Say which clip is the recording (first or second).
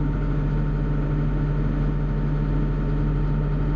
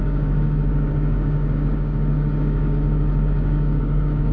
first